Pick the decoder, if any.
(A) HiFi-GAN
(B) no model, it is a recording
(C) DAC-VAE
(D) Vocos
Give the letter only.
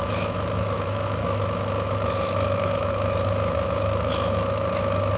C